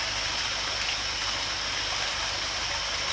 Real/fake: real